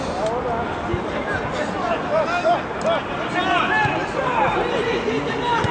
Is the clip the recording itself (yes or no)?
yes